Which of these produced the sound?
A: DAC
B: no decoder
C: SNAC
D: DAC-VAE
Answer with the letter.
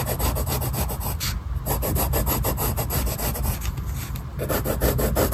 B